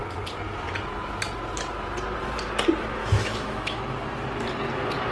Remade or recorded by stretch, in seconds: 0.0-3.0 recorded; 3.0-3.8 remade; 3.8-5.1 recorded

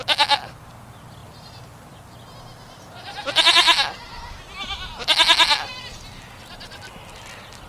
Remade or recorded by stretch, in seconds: 0.0-7.7 recorded

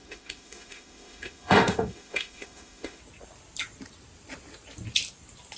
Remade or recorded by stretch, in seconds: 0.0-3.0 remade; 3.0-5.6 recorded

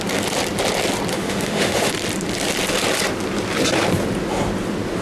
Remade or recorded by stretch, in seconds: 0.0-1.1 recorded; 1.1-1.9 remade; 1.9-5.0 recorded

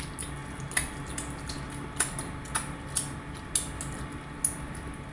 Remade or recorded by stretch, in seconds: 0.0-5.1 recorded

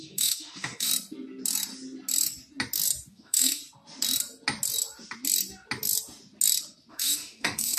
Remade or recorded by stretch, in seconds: 0.0-0.9 remade; 0.9-3.1 recorded; 3.1-3.6 remade; 3.6-6.9 recorded; 6.9-7.8 remade